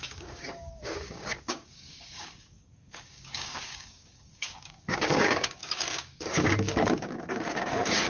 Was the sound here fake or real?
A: fake